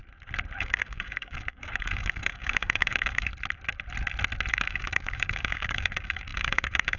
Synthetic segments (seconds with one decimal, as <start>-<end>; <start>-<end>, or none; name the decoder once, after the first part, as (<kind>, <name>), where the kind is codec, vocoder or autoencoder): 0.6-3.3 (codec, DAC); 4.5-7.0